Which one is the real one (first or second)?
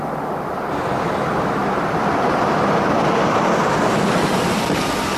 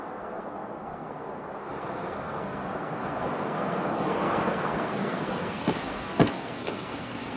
first